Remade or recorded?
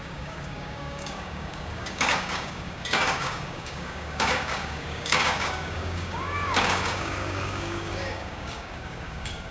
remade